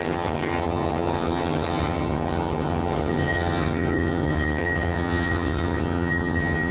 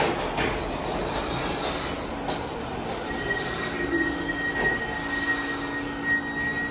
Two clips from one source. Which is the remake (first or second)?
first